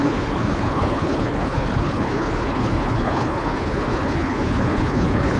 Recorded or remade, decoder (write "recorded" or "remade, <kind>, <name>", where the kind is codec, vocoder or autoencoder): remade, codec, HILCodec